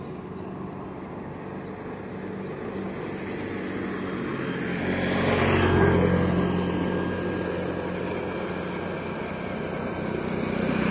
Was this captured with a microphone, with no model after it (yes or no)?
yes